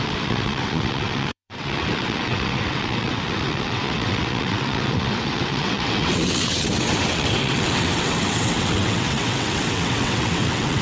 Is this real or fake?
fake